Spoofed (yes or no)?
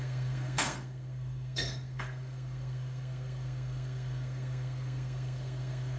yes